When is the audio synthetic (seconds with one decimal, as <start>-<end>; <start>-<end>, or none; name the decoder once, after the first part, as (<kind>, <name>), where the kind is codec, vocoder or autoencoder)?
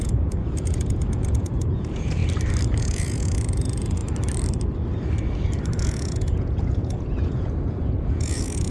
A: 0.0-2.2 (vocoder, Vocos); 2.8-4.0; 5.8-8.7